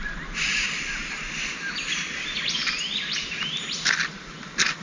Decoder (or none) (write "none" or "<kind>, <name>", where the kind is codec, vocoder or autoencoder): none